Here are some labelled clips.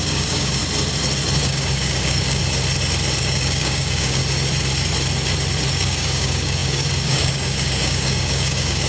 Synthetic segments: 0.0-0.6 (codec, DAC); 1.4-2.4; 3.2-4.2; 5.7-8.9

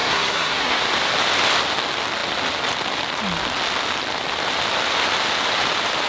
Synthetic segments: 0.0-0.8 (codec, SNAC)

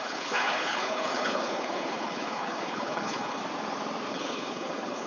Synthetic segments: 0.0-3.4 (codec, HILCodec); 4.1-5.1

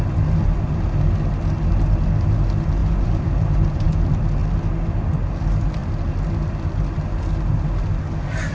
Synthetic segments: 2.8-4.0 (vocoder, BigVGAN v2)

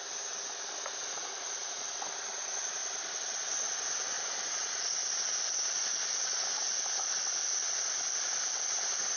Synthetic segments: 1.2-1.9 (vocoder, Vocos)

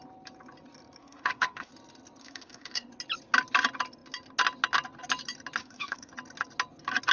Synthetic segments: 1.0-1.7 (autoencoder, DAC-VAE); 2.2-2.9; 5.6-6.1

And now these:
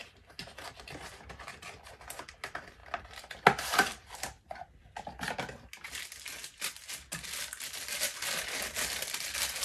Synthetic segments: none

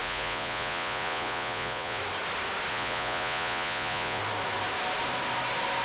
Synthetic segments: 0.0-2.0 (vocoder, Vocos); 2.7-4.2